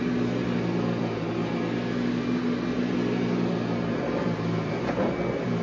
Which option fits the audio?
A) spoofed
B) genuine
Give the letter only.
B